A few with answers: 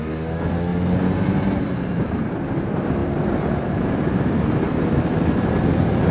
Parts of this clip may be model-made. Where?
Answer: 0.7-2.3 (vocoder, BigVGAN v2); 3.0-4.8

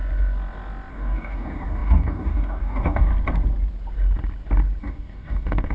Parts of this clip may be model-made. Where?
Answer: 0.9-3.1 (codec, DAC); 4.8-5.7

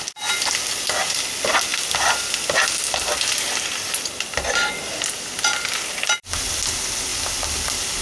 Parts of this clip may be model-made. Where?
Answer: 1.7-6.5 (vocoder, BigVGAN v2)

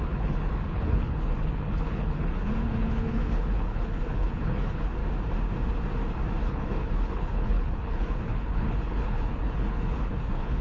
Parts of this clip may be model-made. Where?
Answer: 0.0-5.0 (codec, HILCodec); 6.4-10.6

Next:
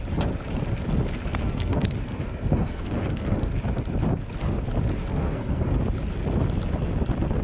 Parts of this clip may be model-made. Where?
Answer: 1.4-3.5 (codec, SNAC); 5.1-5.8